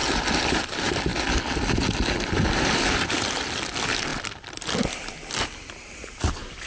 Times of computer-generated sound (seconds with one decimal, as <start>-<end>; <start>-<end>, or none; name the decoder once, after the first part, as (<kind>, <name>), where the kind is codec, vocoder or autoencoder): none